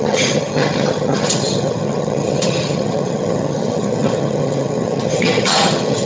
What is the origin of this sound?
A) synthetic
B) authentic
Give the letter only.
A